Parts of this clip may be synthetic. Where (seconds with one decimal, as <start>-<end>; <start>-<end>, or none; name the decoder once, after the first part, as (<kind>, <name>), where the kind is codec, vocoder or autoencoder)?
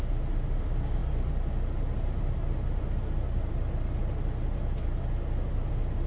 none